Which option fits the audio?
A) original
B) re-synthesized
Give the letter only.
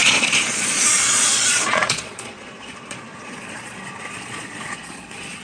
B